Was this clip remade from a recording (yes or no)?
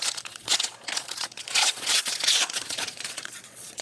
yes